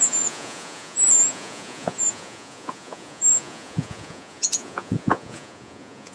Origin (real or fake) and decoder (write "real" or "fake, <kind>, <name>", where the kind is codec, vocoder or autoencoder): fake, vocoder, Vocos